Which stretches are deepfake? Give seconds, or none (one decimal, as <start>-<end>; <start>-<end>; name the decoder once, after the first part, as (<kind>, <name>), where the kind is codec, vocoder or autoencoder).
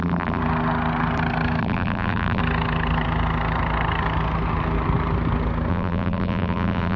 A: 0.0-0.4 (vocoder, BigVGAN v2); 1.6-2.4; 5.7-7.0